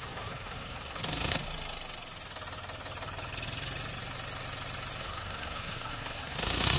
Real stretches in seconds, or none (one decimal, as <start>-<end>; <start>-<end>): 1.4-5.0